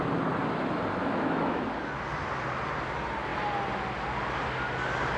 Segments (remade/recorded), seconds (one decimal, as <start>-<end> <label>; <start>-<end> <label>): 0.0-1.0 recorded; 1.0-1.6 remade; 1.6-5.2 recorded